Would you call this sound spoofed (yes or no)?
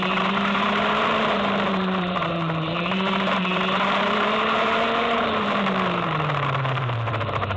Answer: yes